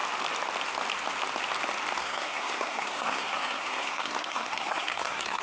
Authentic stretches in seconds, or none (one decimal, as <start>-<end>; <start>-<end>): 0.0-2.0